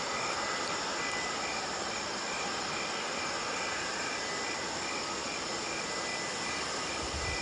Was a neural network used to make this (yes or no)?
no